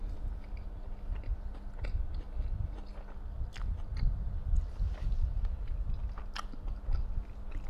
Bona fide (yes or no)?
yes